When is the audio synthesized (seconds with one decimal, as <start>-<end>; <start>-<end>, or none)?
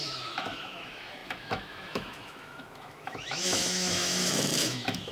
0.0-5.1